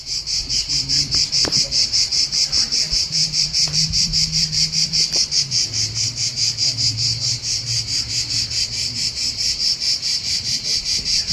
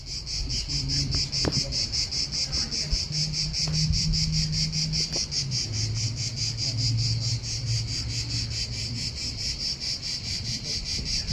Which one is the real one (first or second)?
second